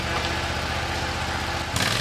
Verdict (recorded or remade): recorded